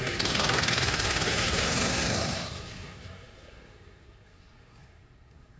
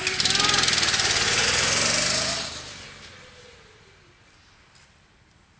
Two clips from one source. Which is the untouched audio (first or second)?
second